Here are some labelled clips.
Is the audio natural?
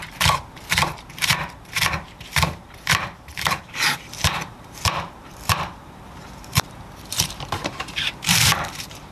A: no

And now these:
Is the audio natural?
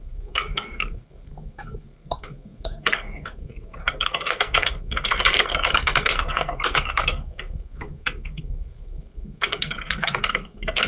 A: no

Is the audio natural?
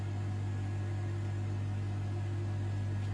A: yes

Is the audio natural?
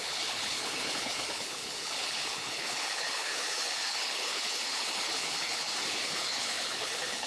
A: no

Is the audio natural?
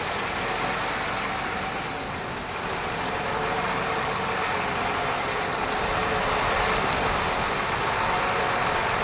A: yes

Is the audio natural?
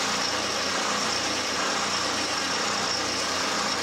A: yes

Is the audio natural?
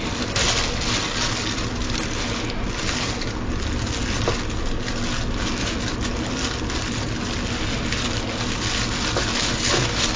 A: yes